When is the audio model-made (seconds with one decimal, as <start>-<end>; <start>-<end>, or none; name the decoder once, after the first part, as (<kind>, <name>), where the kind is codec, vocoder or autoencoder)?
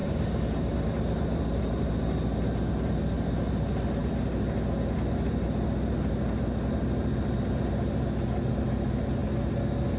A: none